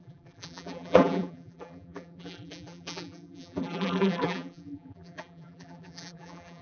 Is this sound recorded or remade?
remade